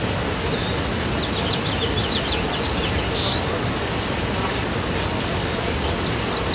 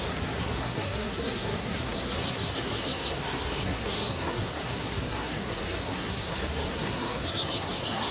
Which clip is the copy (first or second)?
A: second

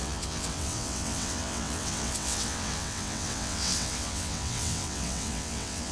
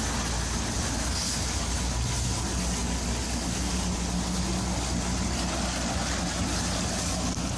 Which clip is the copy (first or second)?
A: first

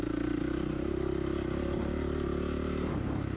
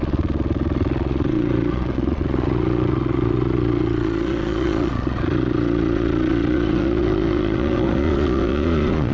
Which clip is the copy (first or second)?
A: second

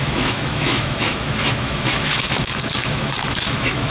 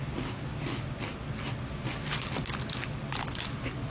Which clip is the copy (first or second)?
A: first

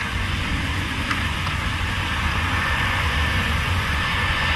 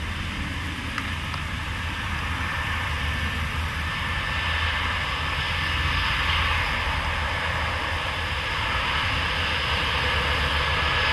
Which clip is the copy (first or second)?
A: first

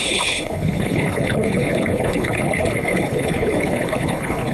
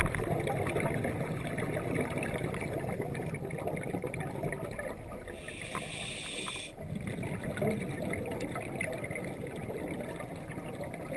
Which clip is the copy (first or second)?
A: first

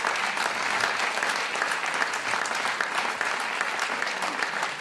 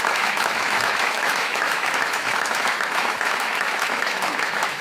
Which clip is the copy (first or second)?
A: second